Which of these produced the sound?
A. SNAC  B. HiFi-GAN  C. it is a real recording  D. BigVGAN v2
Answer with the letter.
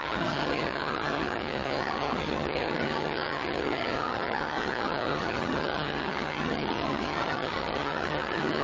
B